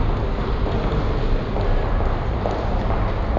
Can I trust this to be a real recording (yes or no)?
yes